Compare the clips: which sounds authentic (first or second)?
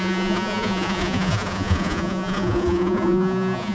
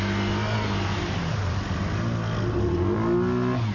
second